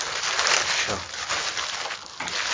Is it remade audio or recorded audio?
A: recorded